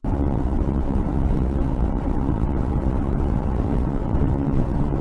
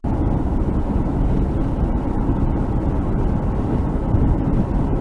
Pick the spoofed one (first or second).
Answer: first